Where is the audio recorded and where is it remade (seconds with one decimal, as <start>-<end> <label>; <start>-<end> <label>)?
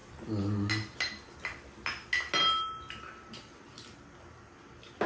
0.0-5.1 recorded